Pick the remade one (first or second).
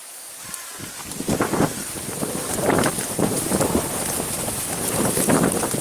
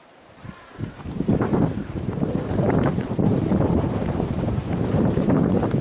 second